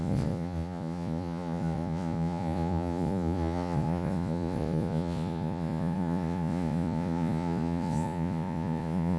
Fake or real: fake